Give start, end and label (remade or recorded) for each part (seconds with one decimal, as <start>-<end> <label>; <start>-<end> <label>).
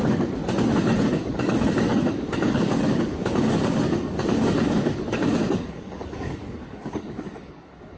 0.0-0.4 remade; 0.4-1.1 recorded; 1.1-8.0 remade